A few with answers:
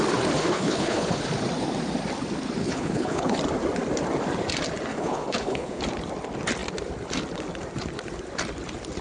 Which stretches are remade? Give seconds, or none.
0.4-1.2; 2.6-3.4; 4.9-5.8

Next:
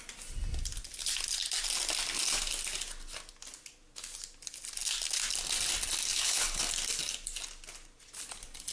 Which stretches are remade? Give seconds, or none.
6.1-6.6

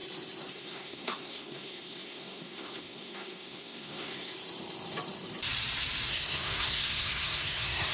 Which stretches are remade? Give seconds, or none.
0.5-4.3; 6.1-7.9

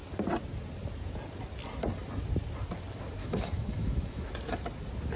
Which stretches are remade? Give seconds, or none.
3.2-4.3

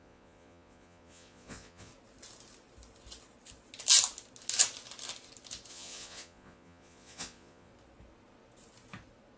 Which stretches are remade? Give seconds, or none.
0.0-1.9; 5.7-7.7

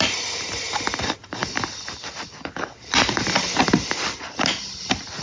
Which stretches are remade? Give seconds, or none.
none